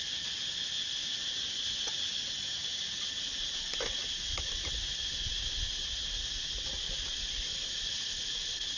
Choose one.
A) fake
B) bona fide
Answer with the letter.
B